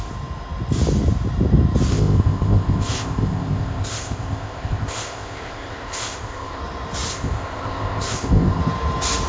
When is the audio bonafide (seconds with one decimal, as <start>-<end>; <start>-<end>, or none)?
0.0-1.9; 6.6-7.1; 8.6-9.3